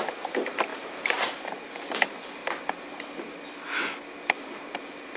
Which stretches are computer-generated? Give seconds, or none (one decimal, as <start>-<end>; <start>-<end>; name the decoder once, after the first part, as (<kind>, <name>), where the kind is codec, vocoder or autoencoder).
0.0-2.4 (vocoder, BigVGAN v2)